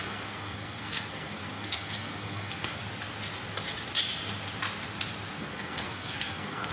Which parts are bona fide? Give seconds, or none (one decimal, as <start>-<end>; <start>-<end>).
2.8-5.4